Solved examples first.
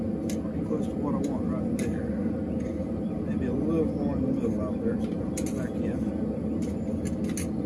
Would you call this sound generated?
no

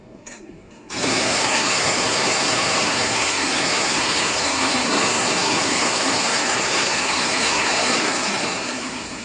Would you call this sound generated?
yes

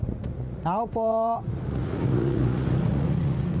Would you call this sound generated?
yes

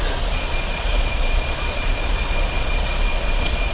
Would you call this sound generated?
yes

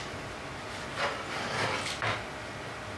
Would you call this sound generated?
no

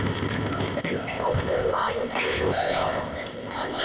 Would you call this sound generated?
yes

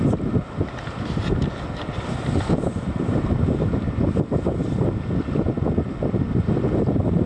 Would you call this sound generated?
no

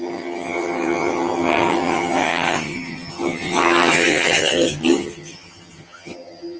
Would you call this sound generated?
yes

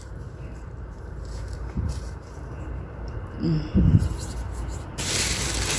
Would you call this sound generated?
yes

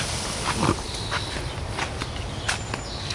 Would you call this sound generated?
no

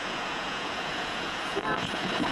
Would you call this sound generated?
yes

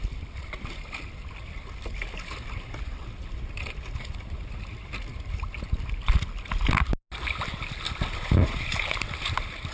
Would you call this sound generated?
no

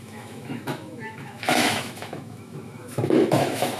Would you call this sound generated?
yes